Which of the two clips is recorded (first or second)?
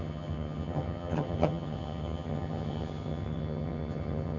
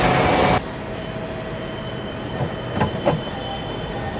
second